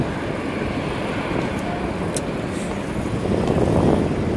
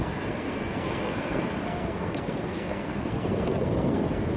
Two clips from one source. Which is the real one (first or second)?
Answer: first